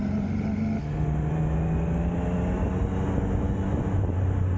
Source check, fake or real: real